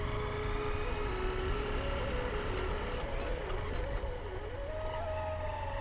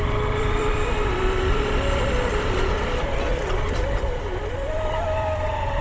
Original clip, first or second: first